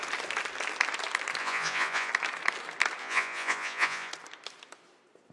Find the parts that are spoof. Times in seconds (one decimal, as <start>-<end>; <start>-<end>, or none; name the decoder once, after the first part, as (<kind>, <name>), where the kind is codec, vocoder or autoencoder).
1.4-2.1 (vocoder, Vocos); 3.0-4.1